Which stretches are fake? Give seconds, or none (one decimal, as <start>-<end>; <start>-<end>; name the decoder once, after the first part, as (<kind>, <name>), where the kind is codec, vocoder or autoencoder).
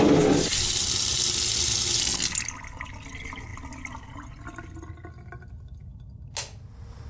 none